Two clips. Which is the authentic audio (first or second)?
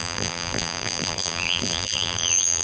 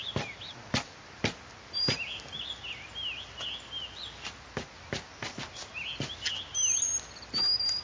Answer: second